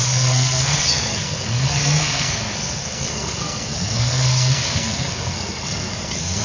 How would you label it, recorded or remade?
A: remade